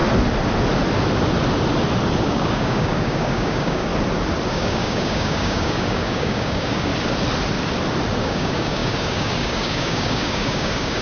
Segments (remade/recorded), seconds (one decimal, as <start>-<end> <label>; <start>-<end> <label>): 0.0-2.2 recorded; 2.2-3.9 remade; 3.9-4.5 recorded; 4.5-6.9 remade; 6.9-8.2 recorded; 8.2-11.0 remade